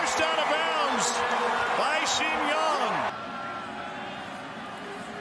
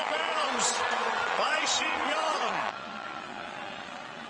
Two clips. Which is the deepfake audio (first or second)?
second